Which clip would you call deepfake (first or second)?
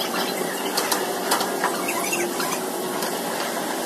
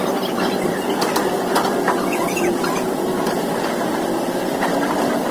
second